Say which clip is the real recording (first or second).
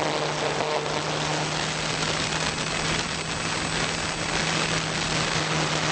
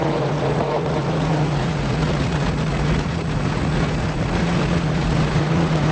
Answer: first